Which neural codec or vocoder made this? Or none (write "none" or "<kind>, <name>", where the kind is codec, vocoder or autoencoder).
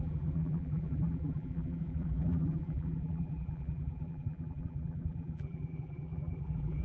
vocoder, BigVGAN v2